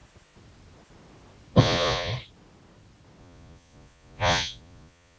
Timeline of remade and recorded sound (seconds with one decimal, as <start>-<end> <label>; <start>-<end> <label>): 0.0-1.6 recorded; 1.6-2.1 remade; 2.1-3.2 recorded; 3.2-5.2 remade